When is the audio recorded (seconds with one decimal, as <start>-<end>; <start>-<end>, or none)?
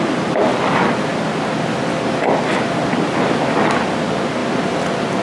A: 0.0-5.2